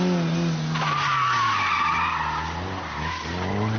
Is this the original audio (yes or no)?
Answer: yes